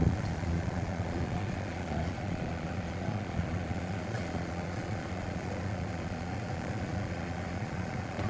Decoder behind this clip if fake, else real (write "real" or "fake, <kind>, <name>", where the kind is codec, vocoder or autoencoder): fake, vocoder, Vocos